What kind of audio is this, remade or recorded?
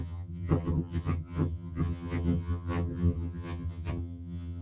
remade